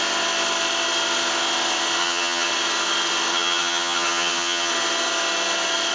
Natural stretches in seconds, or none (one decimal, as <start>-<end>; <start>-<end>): 0.0-2.0; 2.5-3.3; 4.7-5.9